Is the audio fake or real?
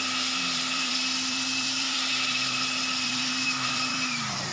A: fake